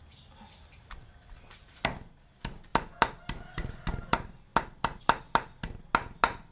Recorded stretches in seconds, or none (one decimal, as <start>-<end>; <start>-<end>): 0.0-6.5